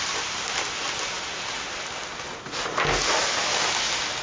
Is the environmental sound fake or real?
real